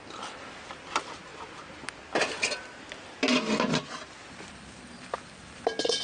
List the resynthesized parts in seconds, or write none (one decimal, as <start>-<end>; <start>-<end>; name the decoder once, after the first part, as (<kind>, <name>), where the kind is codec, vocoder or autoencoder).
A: none